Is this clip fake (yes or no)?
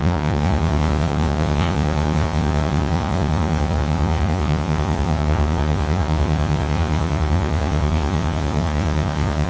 yes